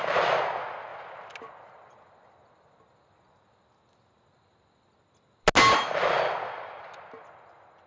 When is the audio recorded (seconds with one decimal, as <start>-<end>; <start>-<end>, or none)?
0.0-7.9